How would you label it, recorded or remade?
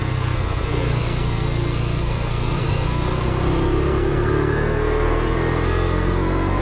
remade